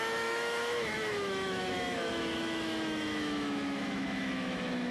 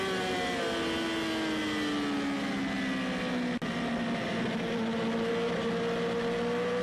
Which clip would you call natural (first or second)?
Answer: second